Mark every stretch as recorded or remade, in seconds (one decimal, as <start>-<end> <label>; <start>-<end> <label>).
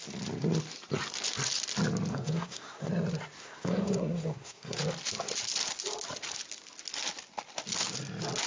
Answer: 0.0-2.1 recorded; 2.1-2.9 remade; 2.9-3.4 recorded; 3.4-4.8 remade; 4.8-8.5 recorded